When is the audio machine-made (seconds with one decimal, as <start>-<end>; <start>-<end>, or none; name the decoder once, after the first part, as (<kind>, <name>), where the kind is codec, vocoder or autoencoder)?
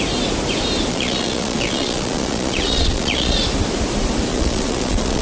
0.9-3.4 (vocoder, Vocos); 4.3-5.2